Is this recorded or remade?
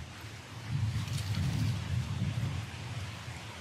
recorded